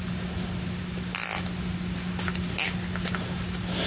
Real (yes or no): yes